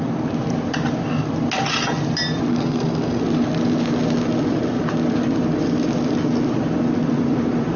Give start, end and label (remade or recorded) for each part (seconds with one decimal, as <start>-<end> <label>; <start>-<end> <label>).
0.0-2.5 recorded; 2.5-3.2 remade; 3.2-7.8 recorded